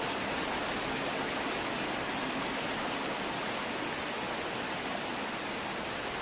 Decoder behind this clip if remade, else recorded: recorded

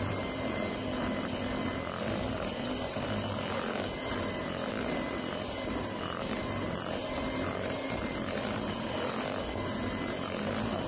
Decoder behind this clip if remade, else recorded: remade, vocoder, BigVGAN v2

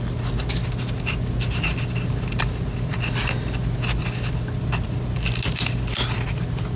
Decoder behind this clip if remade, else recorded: recorded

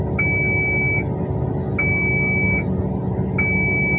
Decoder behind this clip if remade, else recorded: recorded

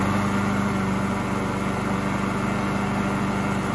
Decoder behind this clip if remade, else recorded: recorded